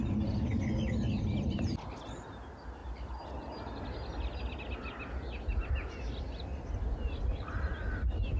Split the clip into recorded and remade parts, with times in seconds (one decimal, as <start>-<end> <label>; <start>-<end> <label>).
0.0-8.4 recorded